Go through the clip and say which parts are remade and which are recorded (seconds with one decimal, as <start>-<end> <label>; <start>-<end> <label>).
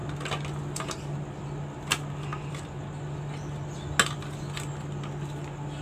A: 0.0-5.8 recorded